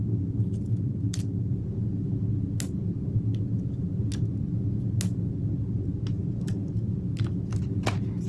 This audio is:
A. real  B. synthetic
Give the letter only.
A